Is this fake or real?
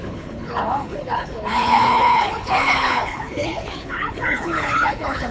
fake